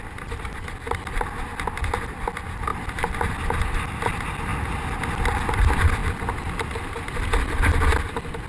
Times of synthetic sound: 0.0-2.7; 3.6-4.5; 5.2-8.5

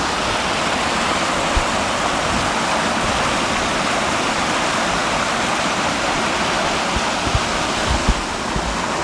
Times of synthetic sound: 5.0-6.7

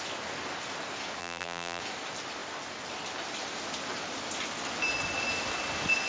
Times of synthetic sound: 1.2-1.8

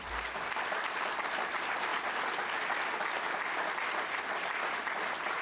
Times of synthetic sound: 0.0-1.9; 2.8-5.4